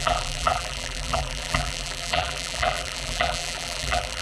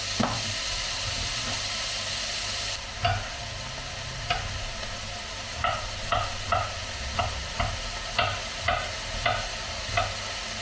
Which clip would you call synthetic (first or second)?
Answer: first